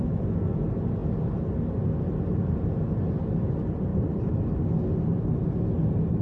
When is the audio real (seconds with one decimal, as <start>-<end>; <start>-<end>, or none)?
0.0-3.9; 4.4-6.2